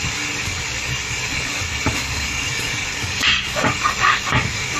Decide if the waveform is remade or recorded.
remade